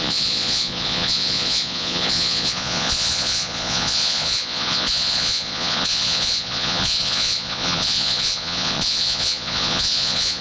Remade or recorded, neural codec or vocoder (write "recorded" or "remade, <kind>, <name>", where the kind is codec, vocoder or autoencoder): remade, vocoder, Vocos